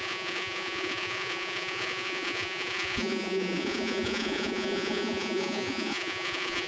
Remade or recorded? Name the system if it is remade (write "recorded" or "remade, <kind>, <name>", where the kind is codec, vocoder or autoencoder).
remade, vocoder, Vocos